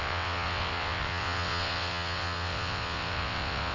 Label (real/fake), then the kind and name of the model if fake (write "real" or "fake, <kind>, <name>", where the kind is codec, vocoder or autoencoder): fake, vocoder, WaveNeXt